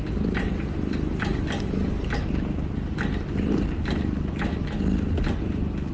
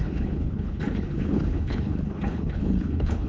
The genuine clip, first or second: first